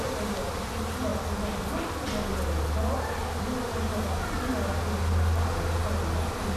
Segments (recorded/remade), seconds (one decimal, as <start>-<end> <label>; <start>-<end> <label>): 0.0-6.6 recorded